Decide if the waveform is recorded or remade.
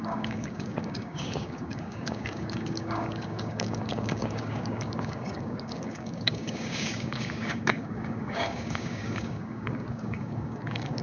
remade